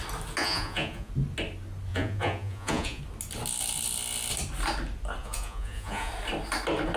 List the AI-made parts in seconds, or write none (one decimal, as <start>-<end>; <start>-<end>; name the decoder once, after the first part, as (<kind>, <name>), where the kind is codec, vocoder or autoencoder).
0.4-1.1 (vocoder, Vocos); 1.9-3.0; 5.2-6.1